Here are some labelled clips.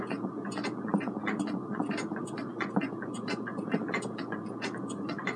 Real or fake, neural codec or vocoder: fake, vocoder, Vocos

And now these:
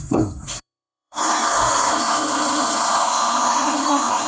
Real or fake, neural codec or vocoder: fake, codec, SNAC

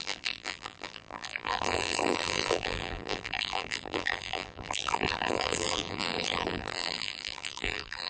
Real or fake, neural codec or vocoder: fake, vocoder, BigVGAN v2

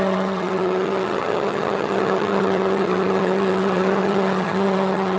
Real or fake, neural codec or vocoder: fake, vocoder, HiFi-GAN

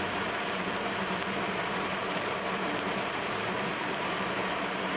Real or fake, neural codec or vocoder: fake, vocoder, BigVGAN v2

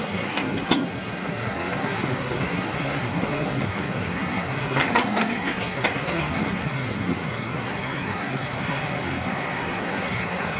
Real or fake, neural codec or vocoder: fake, codec, SNAC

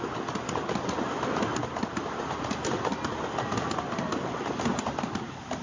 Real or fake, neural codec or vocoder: real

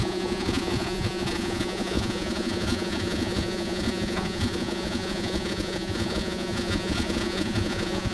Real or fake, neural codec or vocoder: fake, vocoder, Vocos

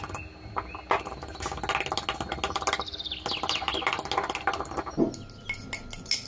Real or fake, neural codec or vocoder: real